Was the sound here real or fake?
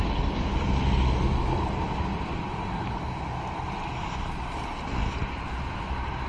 real